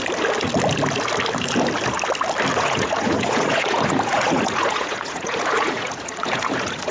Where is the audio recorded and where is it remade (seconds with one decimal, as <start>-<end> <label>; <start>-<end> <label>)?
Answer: 0.0-2.5 recorded; 2.5-6.9 remade